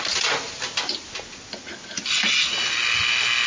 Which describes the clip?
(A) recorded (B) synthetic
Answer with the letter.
A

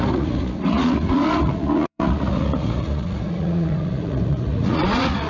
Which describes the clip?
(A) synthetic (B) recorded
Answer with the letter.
A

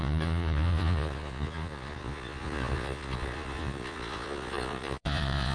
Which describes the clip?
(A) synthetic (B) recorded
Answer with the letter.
A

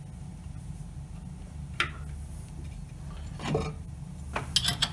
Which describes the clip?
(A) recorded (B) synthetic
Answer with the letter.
A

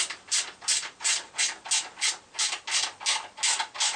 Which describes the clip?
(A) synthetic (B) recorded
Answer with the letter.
B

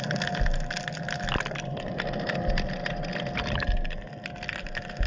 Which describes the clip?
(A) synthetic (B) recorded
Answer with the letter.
B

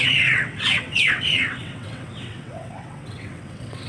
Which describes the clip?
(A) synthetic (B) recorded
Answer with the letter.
A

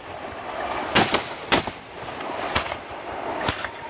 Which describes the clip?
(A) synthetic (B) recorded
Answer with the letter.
A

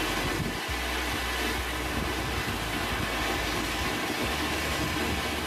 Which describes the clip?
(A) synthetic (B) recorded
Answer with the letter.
B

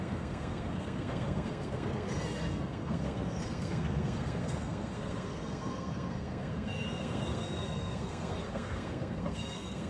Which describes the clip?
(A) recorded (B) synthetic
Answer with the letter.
B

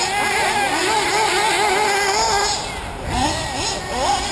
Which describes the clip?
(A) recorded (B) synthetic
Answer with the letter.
A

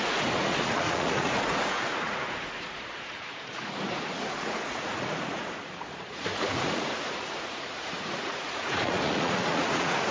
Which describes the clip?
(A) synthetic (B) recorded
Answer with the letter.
A